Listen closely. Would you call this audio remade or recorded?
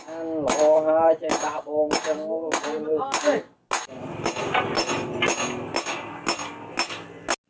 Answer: recorded